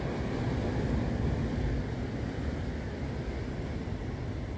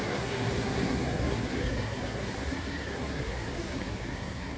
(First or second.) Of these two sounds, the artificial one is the second